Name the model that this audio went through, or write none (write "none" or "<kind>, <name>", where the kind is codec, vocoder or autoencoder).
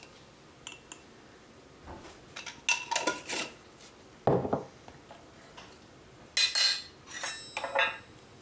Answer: none